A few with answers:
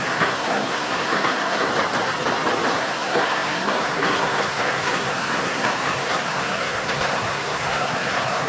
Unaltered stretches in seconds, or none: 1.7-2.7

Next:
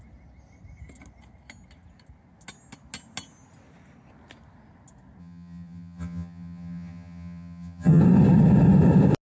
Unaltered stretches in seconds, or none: 0.0-5.2; 8.0-9.3